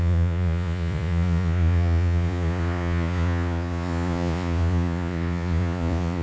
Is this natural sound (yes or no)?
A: no